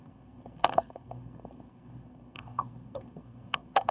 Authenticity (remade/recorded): remade